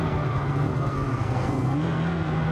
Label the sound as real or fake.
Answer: fake